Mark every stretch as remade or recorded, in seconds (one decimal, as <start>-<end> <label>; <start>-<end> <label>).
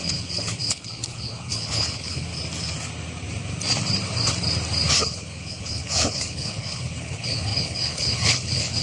0.0-2.3 remade; 2.3-4.9 recorded; 4.9-8.8 remade